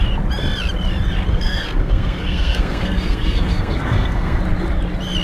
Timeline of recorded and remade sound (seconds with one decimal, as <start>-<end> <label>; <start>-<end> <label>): 0.0-1.3 recorded; 1.3-4.4 remade; 4.4-5.2 recorded